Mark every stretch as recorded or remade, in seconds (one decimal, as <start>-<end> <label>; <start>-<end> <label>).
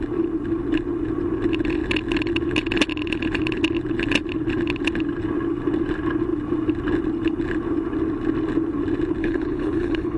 0.0-9.2 recorded; 9.2-10.2 remade